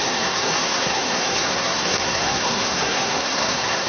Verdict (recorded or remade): remade